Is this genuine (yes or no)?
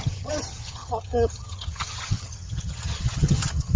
no